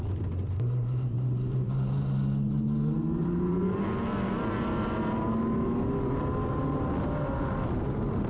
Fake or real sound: real